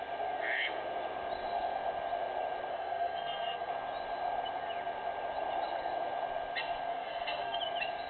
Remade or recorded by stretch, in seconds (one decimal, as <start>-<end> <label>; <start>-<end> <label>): 0.0-2.7 recorded; 2.7-3.7 remade; 3.7-6.9 recorded; 6.9-7.6 remade; 7.6-8.1 recorded